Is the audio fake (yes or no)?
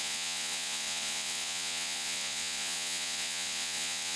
yes